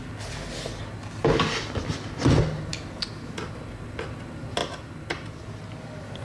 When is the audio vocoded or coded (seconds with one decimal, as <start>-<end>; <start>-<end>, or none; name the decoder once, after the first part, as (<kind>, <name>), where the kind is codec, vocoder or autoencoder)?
none